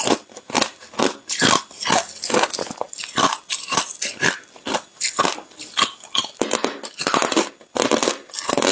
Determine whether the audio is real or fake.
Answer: real